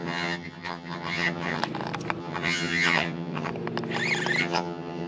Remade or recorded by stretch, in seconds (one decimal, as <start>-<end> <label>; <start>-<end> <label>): 0.0-1.6 remade; 1.6-2.2 recorded; 2.2-3.5 remade; 3.5-4.4 recorded; 4.4-5.1 remade